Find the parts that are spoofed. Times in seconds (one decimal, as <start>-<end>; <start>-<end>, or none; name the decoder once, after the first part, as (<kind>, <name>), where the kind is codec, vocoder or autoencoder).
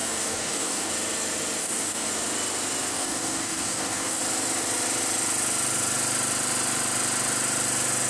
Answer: 0.0-0.9 (codec, DAC); 1.6-2.1; 2.9-4.2